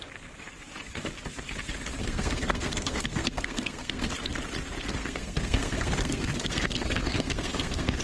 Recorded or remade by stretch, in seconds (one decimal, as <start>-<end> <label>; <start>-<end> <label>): 0.0-2.0 recorded; 2.0-4.1 remade; 4.1-5.0 recorded; 5.0-8.0 remade